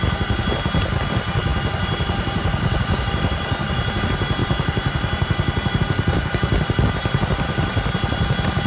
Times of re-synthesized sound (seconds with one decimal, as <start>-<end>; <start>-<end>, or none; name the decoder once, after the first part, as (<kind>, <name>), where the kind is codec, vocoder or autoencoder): 4.4-5.8 (vocoder, BigVGAN v2)